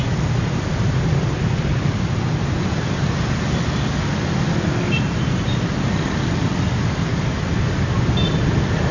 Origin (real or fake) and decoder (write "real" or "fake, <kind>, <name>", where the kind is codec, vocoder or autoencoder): real